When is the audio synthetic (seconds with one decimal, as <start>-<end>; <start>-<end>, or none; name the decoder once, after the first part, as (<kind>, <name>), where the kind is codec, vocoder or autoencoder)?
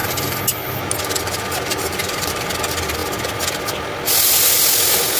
0.0-1.1 (vocoder, BigVGAN v2); 1.7-2.5